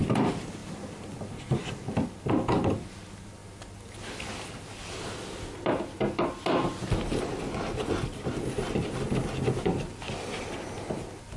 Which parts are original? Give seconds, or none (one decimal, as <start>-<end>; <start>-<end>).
0.0-11.4